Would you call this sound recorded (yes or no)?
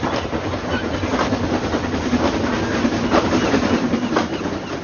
yes